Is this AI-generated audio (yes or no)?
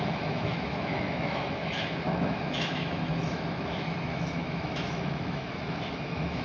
yes